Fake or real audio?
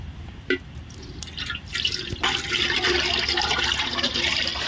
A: real